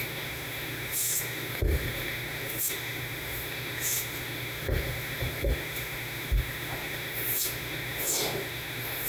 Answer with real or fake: fake